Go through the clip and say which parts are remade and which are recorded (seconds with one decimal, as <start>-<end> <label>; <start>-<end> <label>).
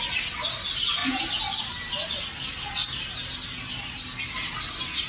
0.0-5.1 recorded